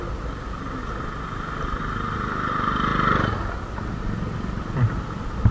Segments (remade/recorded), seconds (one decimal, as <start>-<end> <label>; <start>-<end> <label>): 0.0-5.5 recorded